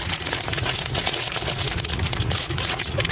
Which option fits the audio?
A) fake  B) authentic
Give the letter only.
A